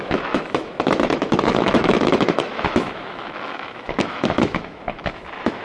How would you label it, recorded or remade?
remade